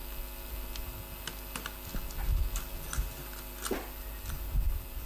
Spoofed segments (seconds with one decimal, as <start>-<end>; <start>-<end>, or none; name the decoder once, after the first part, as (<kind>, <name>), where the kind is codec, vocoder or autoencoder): none